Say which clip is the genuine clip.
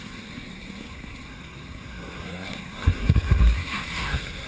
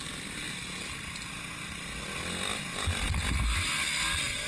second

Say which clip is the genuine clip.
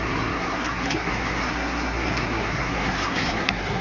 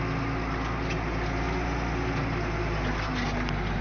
second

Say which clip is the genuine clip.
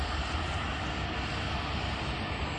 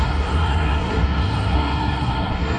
first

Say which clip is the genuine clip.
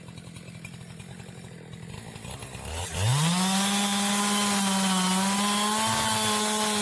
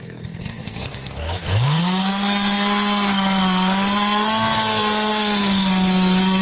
first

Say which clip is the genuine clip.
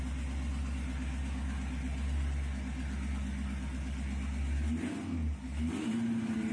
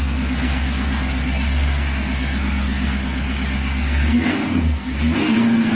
first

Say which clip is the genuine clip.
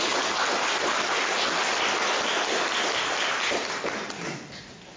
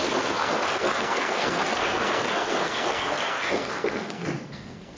first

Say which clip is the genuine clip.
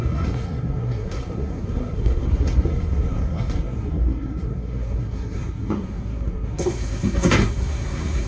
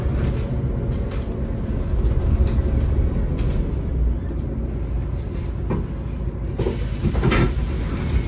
second